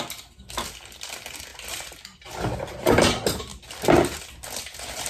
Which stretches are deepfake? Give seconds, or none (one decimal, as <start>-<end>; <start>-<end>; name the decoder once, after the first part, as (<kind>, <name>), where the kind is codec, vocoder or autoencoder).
none